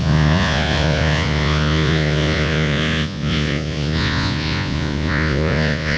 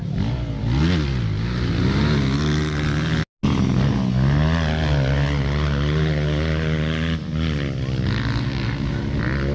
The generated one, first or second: first